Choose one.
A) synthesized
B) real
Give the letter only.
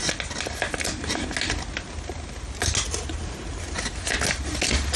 B